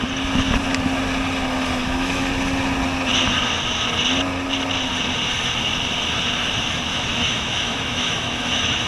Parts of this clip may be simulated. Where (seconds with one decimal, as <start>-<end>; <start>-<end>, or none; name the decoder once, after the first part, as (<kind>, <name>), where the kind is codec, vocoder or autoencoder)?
1.8-2.3 (autoencoder, DAC-VAE); 6.9-8.9

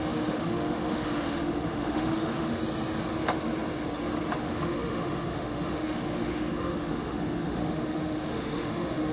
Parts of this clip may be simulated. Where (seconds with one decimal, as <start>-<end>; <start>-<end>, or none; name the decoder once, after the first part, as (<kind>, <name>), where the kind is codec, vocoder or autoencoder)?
0.0-2.6 (autoencoder, DAC-VAE); 4.4-9.1

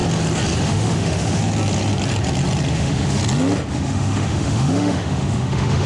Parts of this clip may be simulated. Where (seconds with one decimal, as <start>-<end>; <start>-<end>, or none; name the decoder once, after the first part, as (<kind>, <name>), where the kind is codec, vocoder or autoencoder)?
0.6-1.4 (autoencoder, DAC-VAE); 2.7-3.2; 3.7-5.9

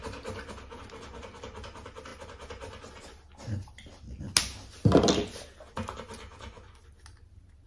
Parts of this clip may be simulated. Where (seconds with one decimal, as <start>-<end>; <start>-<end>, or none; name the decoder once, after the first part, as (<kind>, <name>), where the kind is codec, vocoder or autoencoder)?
none

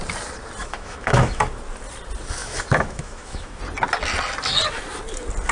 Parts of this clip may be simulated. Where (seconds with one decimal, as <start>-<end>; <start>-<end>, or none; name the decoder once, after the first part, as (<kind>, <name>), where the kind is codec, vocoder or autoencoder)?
0.6-1.4 (autoencoder, DAC-VAE); 2.4-3.6

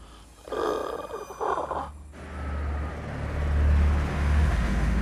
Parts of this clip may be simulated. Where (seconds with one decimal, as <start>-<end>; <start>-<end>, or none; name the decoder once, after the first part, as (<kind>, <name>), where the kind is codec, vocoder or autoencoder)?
4.1-5.0 (autoencoder, DAC-VAE)